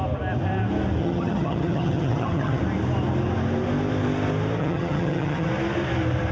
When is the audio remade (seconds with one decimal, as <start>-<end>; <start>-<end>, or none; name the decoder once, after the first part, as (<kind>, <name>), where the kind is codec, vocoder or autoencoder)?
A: 1.0-2.6 (vocoder, HiFi-GAN); 4.6-5.5